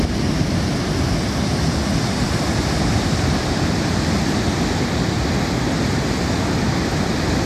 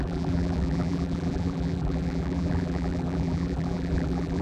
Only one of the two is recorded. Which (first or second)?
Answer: first